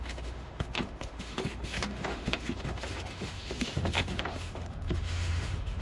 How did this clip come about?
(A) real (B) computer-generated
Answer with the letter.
B